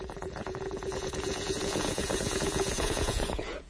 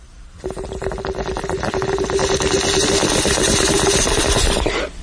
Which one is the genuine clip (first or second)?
second